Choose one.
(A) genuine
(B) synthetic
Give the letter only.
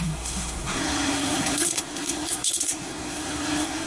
B